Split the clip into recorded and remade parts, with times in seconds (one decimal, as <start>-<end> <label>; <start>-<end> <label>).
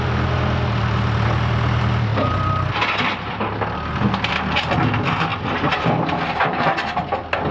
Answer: 0.0-2.1 recorded; 2.1-2.7 remade; 2.7-5.3 recorded; 5.3-7.0 remade; 7.0-7.5 recorded